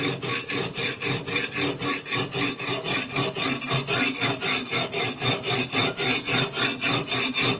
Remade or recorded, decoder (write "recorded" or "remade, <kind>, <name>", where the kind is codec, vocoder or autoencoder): recorded